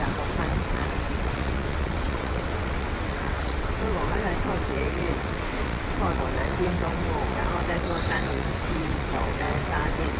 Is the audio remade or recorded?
remade